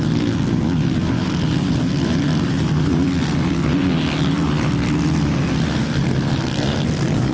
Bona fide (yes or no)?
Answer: yes